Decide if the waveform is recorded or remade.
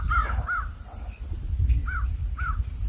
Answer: recorded